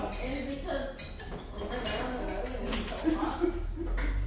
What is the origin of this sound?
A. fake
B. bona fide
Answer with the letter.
B